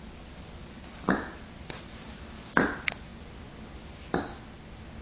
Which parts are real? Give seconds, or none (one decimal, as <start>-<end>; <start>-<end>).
0.0-5.0